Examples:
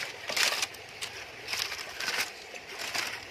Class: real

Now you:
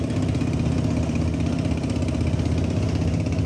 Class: real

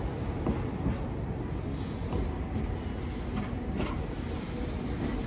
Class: real